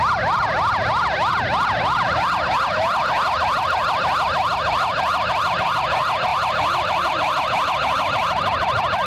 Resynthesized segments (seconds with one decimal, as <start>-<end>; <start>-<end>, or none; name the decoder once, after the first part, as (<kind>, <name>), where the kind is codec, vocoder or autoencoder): 6.3-9.1 (vocoder, BigVGAN v2)